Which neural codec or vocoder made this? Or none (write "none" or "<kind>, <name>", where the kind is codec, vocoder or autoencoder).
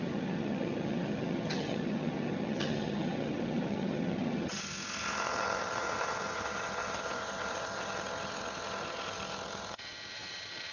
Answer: vocoder, HiFi-GAN